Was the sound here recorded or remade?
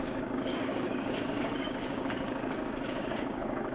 remade